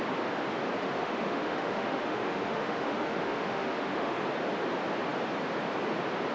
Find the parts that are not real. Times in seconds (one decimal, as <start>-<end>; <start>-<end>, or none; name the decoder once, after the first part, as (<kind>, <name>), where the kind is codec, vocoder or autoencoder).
0.8-4.2 (autoencoder, DAC-VAE)